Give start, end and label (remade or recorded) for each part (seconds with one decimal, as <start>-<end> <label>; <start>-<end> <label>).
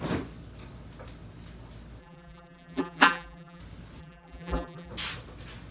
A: 0.0-2.0 recorded; 2.0-3.6 remade; 3.6-4.0 recorded; 4.0-4.9 remade; 4.9-5.7 recorded